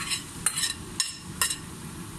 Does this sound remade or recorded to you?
recorded